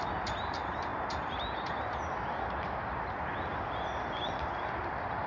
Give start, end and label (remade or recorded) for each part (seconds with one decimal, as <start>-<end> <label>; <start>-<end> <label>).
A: 0.0-5.3 recorded